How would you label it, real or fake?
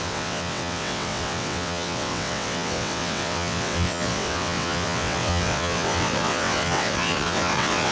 fake